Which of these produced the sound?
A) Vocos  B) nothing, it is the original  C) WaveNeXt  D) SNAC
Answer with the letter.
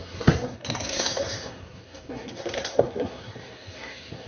D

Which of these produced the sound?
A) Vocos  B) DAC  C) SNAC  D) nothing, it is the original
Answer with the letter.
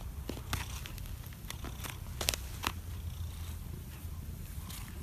D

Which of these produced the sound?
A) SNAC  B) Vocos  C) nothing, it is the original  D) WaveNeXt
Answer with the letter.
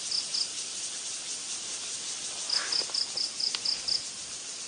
C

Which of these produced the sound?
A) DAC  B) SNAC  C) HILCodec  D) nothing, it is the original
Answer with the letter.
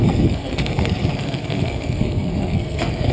B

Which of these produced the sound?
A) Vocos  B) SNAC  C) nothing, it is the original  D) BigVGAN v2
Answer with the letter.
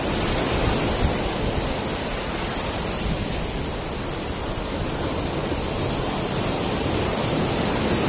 C